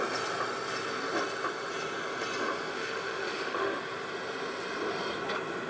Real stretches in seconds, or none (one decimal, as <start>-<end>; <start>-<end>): 0.0-2.7; 3.8-5.7